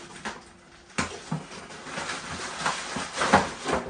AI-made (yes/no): no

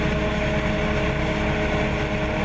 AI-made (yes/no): no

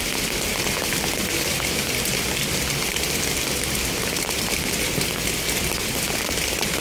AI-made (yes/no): no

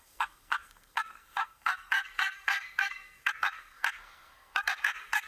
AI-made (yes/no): yes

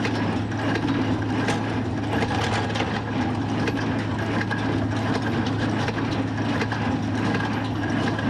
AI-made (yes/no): no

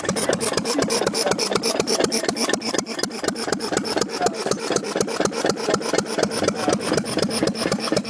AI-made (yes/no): no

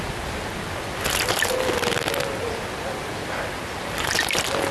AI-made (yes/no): no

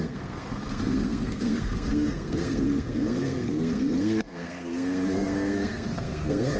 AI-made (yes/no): yes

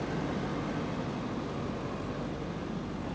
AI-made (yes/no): no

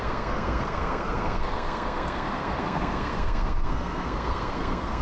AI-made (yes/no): yes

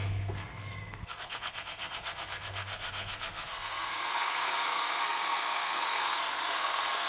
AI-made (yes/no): yes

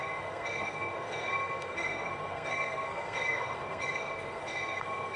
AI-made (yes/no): yes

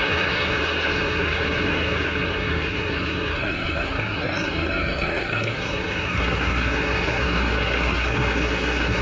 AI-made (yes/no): yes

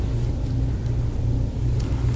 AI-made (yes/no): no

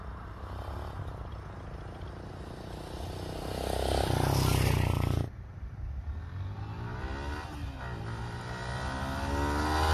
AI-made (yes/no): no